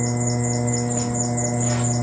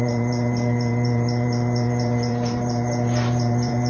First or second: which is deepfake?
second